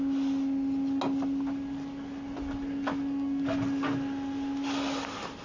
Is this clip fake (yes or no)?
no